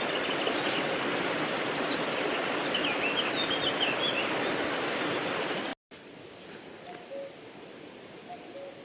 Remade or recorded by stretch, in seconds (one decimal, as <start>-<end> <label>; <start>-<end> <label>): 0.0-8.8 recorded